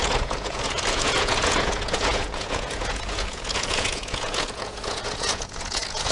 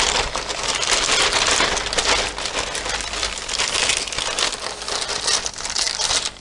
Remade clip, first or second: first